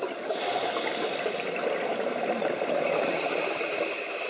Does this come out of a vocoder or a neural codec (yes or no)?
no